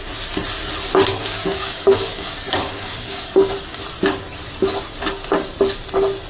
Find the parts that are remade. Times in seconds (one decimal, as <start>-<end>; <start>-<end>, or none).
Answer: 1.2-3.5